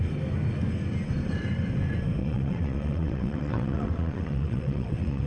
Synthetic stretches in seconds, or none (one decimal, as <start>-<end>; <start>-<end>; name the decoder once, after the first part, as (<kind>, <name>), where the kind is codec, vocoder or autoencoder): 2.2-5.3 (vocoder, WaveNeXt)